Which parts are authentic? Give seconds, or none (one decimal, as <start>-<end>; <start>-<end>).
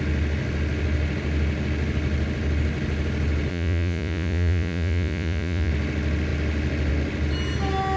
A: 0.0-3.5; 5.7-8.0